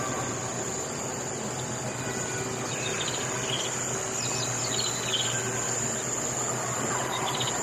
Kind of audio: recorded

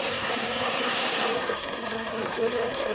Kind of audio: remade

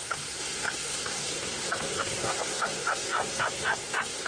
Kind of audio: remade